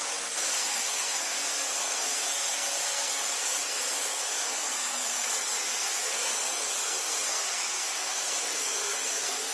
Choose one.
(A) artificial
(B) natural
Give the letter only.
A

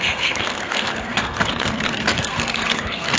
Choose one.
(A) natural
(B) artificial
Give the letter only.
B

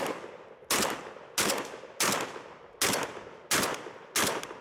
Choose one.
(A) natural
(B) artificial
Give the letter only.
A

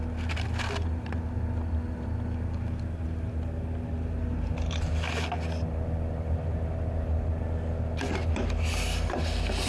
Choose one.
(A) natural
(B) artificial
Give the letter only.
B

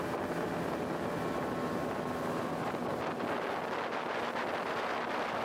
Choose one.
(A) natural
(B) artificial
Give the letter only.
A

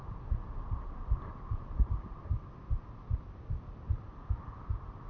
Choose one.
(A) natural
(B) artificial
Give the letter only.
A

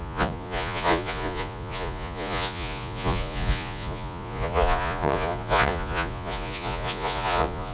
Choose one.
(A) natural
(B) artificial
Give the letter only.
B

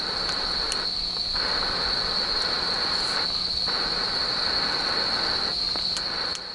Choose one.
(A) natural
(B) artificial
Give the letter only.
A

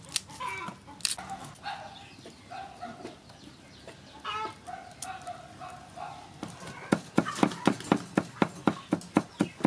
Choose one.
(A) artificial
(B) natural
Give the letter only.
B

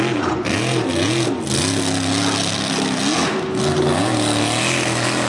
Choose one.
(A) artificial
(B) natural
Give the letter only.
B